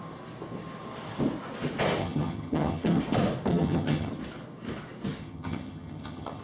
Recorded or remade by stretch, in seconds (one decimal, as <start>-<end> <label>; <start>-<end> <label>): 0.0-2.0 recorded; 2.0-3.0 remade; 3.0-3.5 recorded; 3.5-4.1 remade; 4.1-5.2 recorded; 5.2-6.4 remade